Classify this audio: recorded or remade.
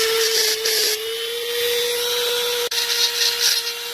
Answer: recorded